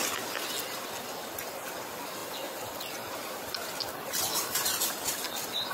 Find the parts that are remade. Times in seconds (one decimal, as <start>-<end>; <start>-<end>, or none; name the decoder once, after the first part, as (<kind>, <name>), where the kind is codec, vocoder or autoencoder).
none